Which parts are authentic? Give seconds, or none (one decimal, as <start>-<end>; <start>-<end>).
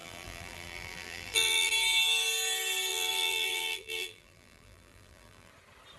1.7-2.9; 5.5-6.0